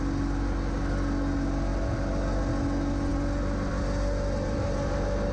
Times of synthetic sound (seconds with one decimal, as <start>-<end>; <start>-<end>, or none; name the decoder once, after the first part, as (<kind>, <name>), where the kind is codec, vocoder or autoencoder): none